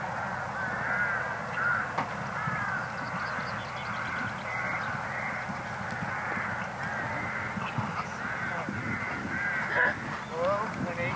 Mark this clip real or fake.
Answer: real